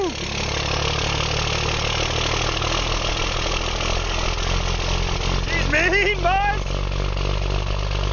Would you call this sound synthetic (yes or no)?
no